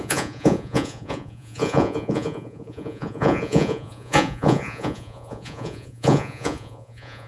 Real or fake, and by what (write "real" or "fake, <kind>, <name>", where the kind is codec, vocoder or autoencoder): fake, vocoder, Vocos